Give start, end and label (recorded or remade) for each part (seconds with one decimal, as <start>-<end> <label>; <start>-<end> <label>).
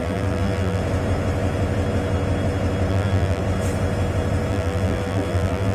0.0-0.8 remade; 0.8-2.9 recorded; 2.9-3.4 remade; 3.4-4.5 recorded; 4.5-5.7 remade